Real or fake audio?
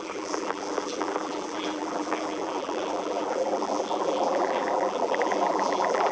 fake